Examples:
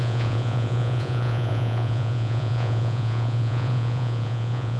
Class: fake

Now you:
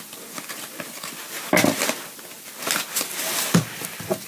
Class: real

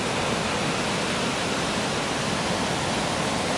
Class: real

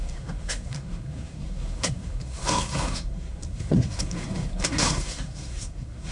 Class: fake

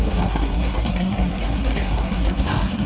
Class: fake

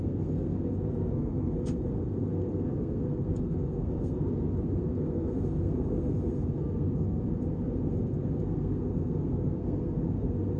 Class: fake